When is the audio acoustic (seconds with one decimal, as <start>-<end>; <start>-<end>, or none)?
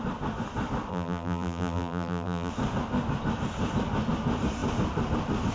0.0-0.9; 2.5-5.5